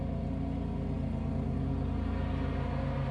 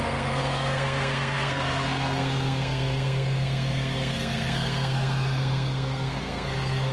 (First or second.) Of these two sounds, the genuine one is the first